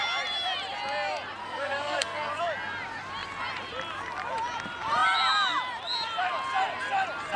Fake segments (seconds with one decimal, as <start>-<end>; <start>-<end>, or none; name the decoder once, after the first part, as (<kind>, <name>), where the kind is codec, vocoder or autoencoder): 1.4-2.4 (codec, SNAC)